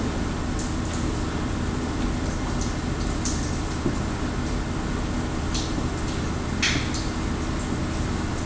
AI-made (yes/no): no